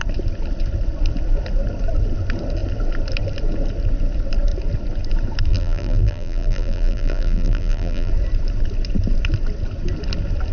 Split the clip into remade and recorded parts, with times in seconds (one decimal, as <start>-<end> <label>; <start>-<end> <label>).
0.0-5.5 recorded; 5.5-8.1 remade; 8.1-10.5 recorded